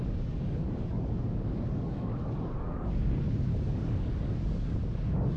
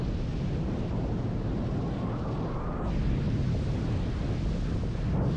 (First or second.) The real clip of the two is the second